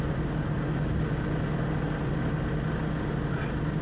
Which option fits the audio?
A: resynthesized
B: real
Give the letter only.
B